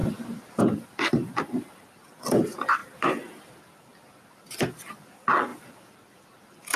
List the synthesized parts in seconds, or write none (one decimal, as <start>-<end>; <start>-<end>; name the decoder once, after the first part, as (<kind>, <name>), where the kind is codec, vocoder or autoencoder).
0.0-6.8 (vocoder, BigVGAN v2)